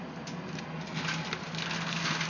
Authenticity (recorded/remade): recorded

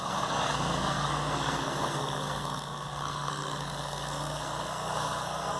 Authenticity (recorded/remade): remade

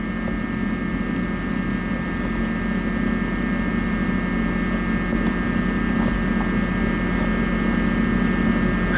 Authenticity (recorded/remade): recorded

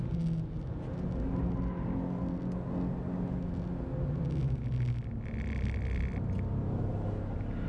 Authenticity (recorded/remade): recorded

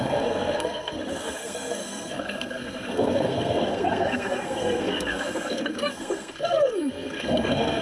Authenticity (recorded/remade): remade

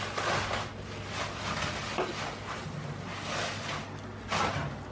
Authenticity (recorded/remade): recorded